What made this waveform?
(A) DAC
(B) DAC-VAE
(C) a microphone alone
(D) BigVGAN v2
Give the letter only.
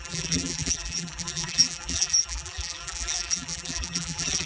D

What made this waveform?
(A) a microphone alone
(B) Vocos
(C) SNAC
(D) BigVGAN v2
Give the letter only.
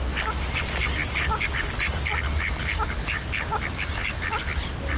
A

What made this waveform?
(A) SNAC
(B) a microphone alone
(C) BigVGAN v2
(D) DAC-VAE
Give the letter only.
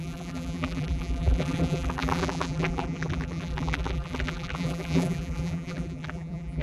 C